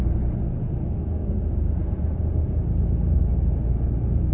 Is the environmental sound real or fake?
real